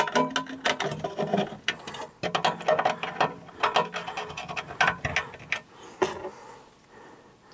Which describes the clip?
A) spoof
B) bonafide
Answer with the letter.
B